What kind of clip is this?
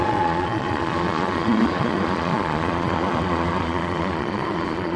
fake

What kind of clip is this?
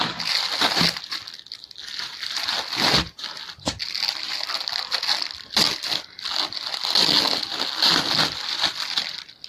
real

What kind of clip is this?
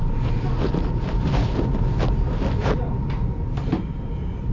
real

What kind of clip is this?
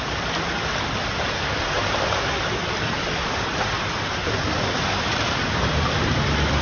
real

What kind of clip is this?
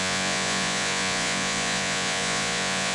fake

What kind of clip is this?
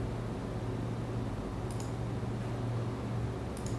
real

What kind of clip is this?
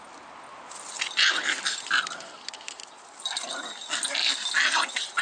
real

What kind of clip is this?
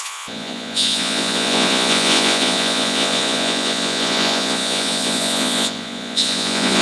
fake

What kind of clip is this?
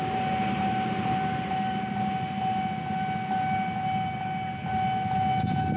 real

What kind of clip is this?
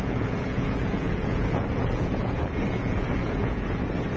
fake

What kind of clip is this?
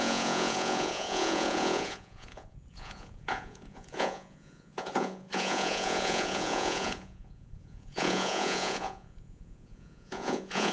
fake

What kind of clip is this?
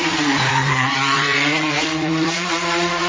fake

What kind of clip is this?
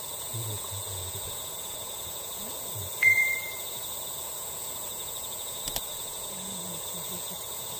fake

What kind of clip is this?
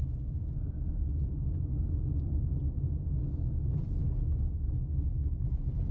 real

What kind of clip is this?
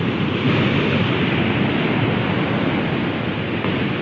real